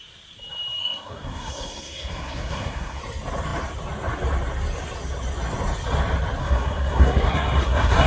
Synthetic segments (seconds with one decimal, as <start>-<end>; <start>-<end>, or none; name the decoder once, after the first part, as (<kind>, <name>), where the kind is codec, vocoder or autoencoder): 0.8-3.0 (codec, SNAC); 6.4-8.1